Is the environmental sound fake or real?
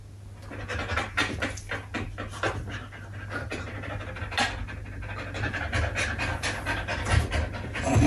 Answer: real